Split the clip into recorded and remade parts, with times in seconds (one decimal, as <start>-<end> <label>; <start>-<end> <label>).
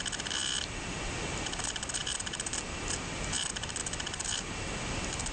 0.0-5.3 recorded